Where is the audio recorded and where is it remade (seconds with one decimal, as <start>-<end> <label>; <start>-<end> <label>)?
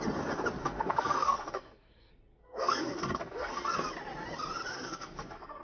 0.0-0.6 recorded; 0.6-3.9 remade; 3.9-4.7 recorded; 4.7-5.6 remade